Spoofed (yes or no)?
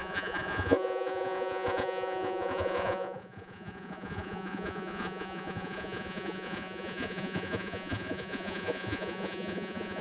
yes